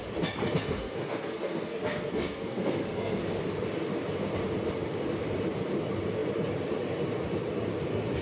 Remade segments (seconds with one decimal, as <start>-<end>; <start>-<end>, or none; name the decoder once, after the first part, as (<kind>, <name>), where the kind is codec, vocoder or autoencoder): 0.4-3.2 (codec, SNAC)